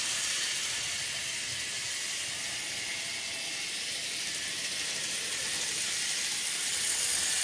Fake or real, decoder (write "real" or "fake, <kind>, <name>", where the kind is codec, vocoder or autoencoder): real